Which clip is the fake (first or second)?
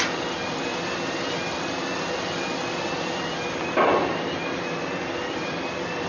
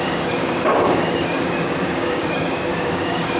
second